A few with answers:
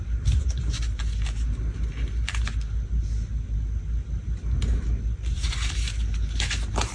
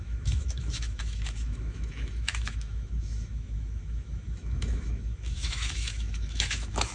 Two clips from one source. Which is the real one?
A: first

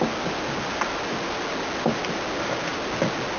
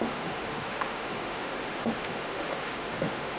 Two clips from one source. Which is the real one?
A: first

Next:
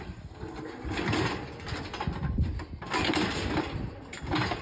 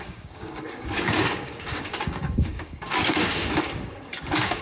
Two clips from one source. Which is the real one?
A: first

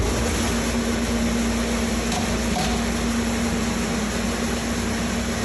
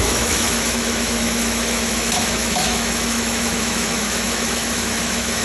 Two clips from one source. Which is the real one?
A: first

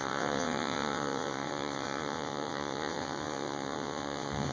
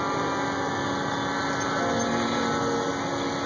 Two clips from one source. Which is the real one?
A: second